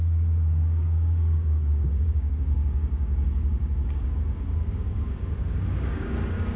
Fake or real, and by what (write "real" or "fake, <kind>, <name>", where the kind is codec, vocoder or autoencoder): fake, codec, DAC